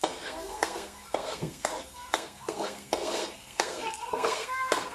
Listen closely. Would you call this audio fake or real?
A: fake